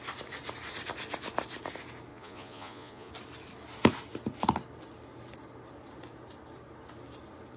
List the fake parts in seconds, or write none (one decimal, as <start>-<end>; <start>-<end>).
2.1-3.1